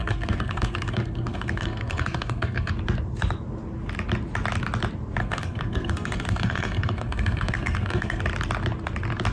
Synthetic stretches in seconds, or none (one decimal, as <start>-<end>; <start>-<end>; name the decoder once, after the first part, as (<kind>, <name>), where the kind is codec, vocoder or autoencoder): 0.0-2.7 (codec, SNAC); 5.2-8.2